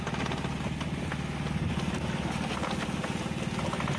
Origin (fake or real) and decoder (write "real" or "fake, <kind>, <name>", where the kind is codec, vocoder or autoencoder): real